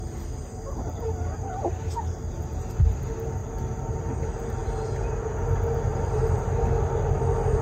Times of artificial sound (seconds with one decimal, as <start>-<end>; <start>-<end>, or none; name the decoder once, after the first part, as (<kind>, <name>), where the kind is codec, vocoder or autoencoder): 5.9-6.9 (vocoder, BigVGAN v2)